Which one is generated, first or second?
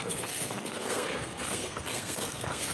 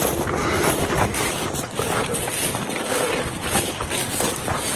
first